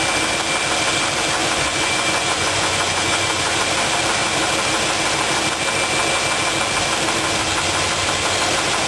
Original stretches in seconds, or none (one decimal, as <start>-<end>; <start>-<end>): 0.0-1.4; 3.6-8.9